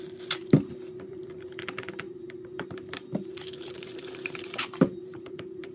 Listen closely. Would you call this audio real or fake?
fake